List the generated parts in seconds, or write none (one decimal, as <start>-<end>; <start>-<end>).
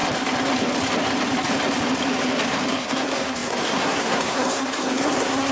2.7-5.5